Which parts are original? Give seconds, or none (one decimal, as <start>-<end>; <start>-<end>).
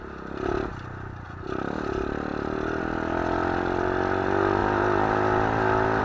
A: 0.0-6.0